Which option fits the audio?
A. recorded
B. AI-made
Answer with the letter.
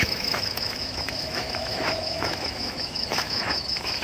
B